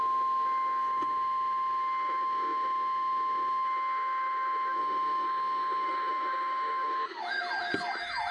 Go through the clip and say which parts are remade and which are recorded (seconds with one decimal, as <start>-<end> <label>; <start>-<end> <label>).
0.0-7.2 remade; 7.2-8.3 recorded